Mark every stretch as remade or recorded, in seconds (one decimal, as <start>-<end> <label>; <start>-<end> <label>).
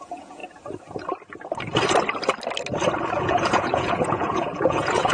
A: 0.0-0.4 remade; 0.4-3.2 recorded; 3.2-5.1 remade